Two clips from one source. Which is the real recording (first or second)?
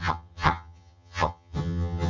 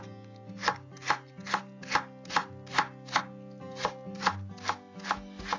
second